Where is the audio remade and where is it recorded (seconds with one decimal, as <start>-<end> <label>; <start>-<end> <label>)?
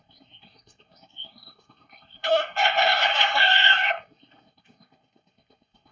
0.0-5.9 remade